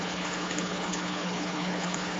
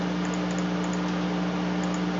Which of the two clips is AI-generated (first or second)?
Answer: first